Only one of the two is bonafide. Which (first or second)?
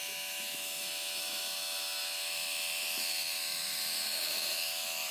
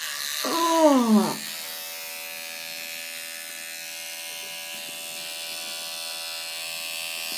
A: second